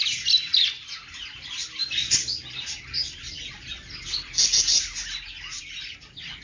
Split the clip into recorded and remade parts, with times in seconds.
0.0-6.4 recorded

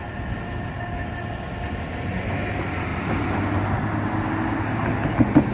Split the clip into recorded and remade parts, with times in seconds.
0.0-5.5 recorded

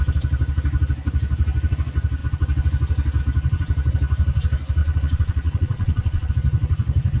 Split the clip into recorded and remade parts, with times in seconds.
0.0-4.8 recorded; 4.8-6.3 remade; 6.3-7.2 recorded

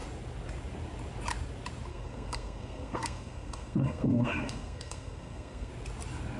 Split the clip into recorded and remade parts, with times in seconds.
0.0-1.9 recorded; 1.9-5.7 remade; 5.7-6.4 recorded

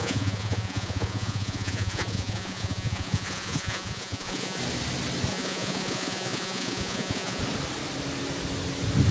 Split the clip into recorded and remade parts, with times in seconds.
0.0-4.6 remade; 4.6-5.3 recorded; 5.3-7.4 remade; 7.4-9.1 recorded

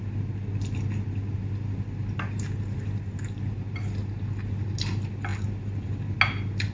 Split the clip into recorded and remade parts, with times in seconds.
0.0-6.7 recorded